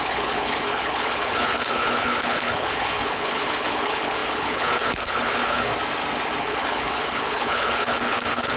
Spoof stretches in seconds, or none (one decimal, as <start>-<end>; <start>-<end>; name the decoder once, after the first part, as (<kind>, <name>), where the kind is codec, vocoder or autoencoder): 0.0-5.7 (codec, HILCodec); 6.4-8.6